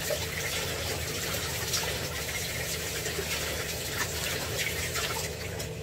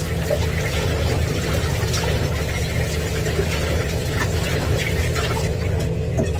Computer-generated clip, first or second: first